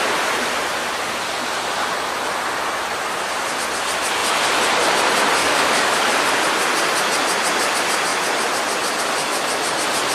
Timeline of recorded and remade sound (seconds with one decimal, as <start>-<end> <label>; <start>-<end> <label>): 0.0-5.4 recorded; 5.4-6.1 remade; 6.1-10.1 recorded